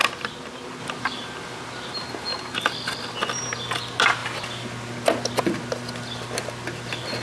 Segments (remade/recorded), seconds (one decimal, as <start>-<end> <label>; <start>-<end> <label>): 0.0-7.2 recorded